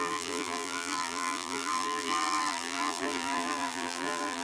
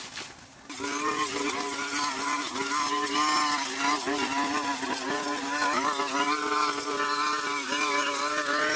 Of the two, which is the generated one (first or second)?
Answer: first